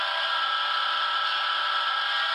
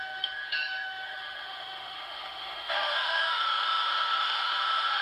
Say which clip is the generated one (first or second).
second